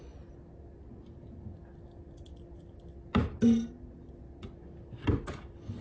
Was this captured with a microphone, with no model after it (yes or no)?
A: yes